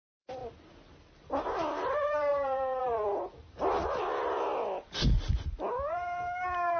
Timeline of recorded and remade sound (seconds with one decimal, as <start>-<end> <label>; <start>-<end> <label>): 0.0-0.4 remade; 0.4-1.7 recorded; 1.7-4.5 remade; 4.5-5.9 recorded; 5.9-6.8 remade